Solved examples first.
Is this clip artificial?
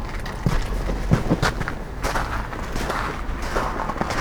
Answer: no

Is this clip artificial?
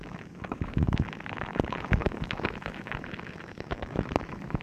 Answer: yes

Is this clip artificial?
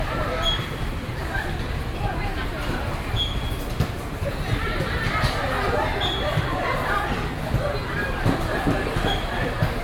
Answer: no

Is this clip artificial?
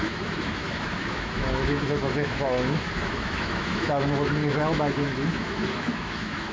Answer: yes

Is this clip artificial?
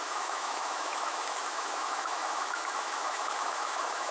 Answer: yes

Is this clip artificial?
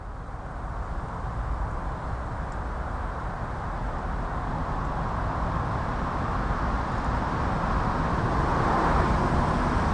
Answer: no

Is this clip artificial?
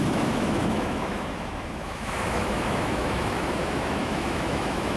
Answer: yes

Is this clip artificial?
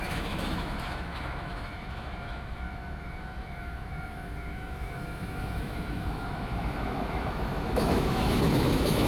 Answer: yes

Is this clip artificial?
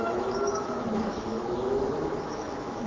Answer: yes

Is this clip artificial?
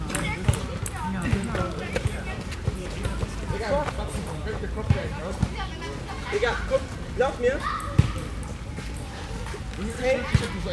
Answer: no